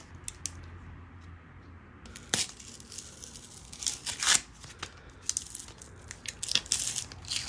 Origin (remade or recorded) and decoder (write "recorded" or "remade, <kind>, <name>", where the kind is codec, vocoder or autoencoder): recorded